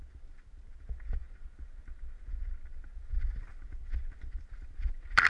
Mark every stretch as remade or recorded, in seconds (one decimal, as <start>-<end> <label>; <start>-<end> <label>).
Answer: 0.0-5.3 recorded